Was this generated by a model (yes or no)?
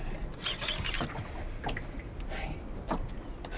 no